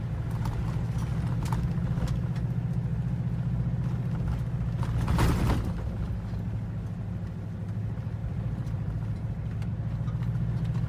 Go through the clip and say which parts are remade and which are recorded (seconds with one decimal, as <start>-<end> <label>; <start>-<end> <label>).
0.0-8.2 recorded; 8.2-9.7 remade; 9.7-10.9 recorded